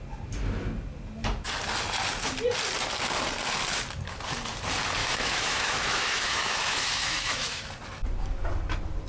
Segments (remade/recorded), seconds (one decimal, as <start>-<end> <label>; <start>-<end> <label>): 0.0-5.0 recorded; 5.0-7.7 remade; 7.7-9.1 recorded